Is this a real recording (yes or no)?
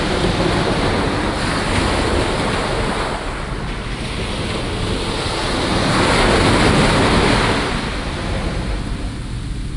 yes